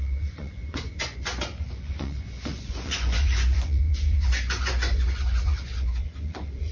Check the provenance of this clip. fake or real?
fake